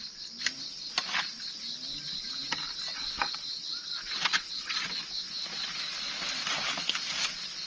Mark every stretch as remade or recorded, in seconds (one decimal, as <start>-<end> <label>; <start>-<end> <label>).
0.0-2.9 recorded; 2.9-4.9 remade; 4.9-7.7 recorded